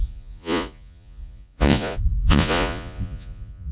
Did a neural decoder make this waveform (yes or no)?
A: yes